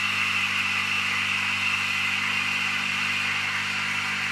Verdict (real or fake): fake